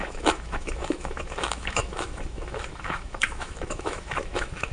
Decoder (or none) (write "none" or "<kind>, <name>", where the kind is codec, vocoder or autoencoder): autoencoder, DAC-VAE